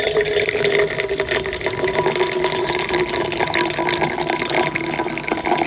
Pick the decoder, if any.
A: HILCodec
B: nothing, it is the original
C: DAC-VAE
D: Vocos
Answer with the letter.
B